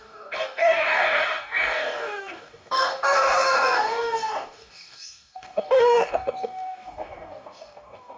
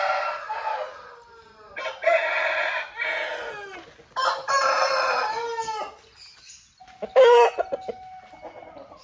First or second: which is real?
second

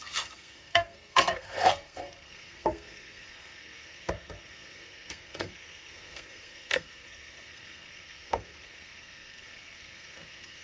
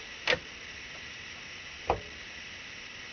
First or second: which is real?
second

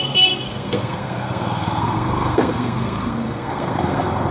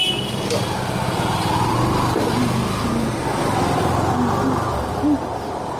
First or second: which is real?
second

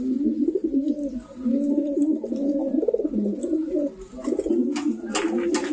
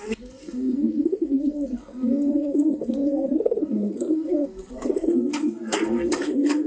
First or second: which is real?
first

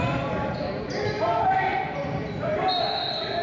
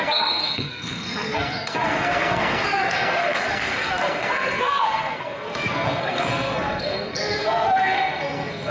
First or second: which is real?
first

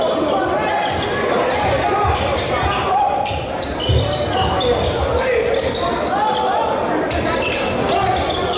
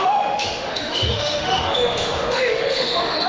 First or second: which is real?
first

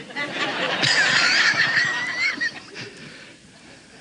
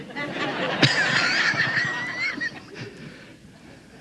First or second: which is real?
second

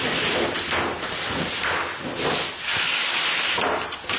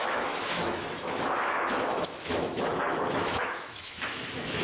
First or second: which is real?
first